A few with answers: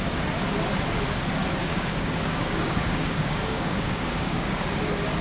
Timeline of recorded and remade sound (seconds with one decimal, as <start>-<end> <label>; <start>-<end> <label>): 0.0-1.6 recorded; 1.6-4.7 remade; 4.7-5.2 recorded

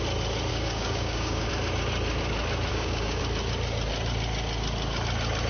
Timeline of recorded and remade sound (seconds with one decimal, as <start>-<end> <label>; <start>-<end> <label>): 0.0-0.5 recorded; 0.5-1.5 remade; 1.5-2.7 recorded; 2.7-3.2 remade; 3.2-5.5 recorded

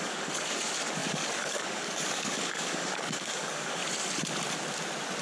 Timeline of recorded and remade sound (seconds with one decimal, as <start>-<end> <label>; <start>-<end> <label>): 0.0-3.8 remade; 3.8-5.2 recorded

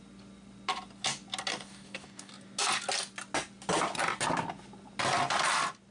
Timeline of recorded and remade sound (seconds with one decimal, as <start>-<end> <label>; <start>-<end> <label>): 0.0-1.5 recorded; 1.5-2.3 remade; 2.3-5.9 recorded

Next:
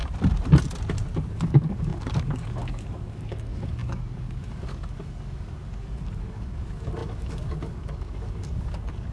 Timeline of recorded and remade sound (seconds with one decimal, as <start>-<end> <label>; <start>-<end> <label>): 0.0-1.3 recorded; 1.3-9.1 remade

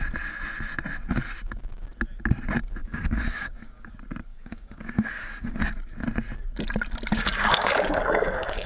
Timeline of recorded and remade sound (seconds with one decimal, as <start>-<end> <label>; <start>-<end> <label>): 0.0-2.8 recorded; 2.8-3.9 remade; 3.9-4.3 recorded; 4.3-5.7 remade; 5.7-7.1 recorded; 7.1-8.7 remade